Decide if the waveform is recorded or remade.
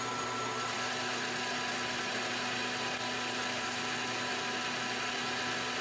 recorded